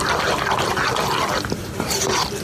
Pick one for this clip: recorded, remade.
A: recorded